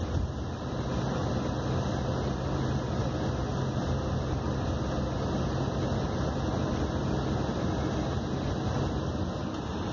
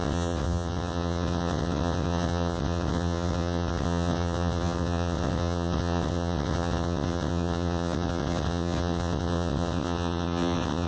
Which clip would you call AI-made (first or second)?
second